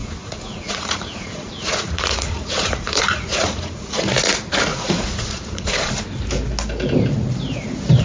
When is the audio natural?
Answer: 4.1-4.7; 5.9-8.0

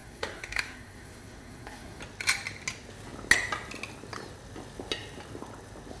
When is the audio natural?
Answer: 2.0-6.0

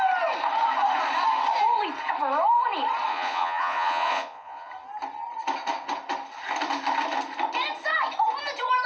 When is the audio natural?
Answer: 0.0-3.1; 4.7-8.9

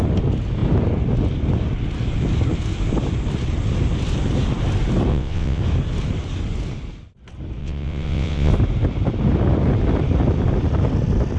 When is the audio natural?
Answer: 0.0-5.1; 5.6-7.6; 8.5-11.4